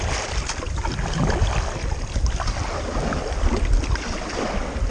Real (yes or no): yes